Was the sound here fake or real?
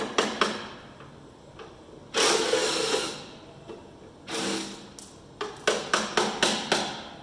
real